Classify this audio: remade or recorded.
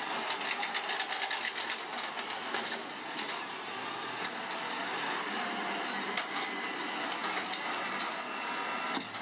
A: recorded